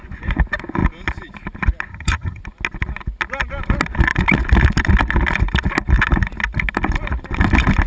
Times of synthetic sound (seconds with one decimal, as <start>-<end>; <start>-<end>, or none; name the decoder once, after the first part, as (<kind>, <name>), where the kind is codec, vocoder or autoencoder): 1.9-2.4 (vocoder, HiFi-GAN)